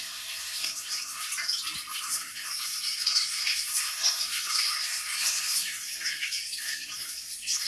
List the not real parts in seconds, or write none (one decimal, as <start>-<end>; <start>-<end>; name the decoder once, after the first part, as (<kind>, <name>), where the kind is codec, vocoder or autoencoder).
0.0-1.3 (codec, SNAC); 1.9-7.7